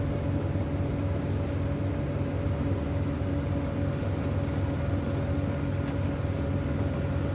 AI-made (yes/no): no